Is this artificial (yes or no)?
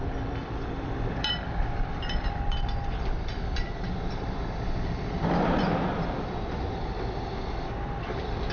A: yes